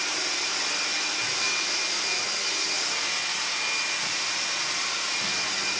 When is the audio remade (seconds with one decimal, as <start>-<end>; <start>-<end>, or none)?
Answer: none